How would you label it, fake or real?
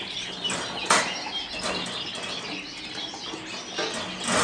real